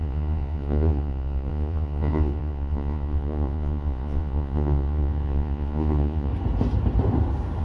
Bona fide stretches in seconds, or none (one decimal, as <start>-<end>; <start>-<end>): 6.3-7.6